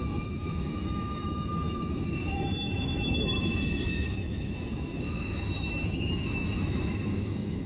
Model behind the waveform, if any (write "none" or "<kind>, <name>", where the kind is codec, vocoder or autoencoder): autoencoder, DAC-VAE